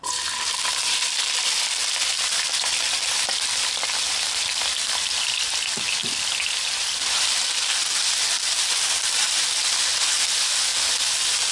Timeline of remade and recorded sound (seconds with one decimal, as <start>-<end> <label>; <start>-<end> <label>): 0.0-11.5 recorded